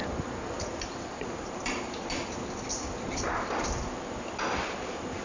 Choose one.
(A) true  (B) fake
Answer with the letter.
A